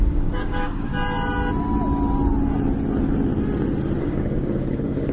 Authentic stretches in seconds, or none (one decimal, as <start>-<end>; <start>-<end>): 0.9-4.0